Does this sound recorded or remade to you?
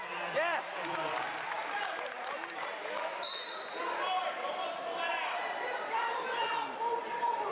remade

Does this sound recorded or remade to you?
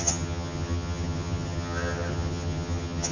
remade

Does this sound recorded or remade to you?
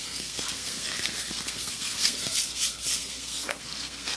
remade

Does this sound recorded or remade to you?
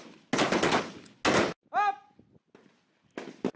recorded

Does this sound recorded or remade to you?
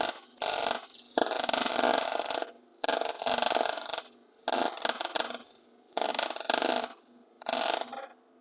recorded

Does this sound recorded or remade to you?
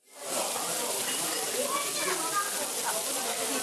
recorded